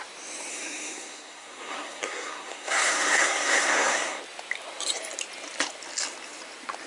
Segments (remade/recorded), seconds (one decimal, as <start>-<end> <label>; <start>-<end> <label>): 0.0-0.5 recorded; 0.5-4.2 remade; 4.2-6.9 recorded